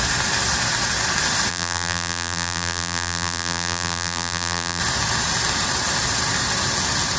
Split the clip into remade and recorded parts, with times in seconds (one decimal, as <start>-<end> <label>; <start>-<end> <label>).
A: 0.0-1.5 recorded; 1.5-4.8 remade; 4.8-7.2 recorded